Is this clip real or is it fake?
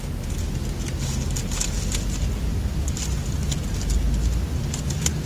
real